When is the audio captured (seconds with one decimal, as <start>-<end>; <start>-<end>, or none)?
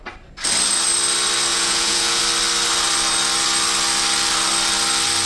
0.0-1.5; 2.2-5.3